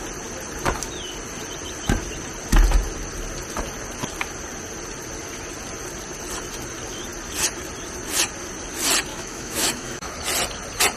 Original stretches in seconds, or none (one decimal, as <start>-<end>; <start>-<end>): 0.0-9.1; 10.1-11.0